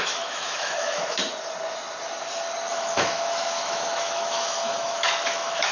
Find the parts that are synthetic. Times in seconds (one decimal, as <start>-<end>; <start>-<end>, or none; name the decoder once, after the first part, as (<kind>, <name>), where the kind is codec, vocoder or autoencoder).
0.0-1.2 (autoencoder, DAC-VAE); 2.7-5.7